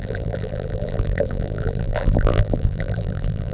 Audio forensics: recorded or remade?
remade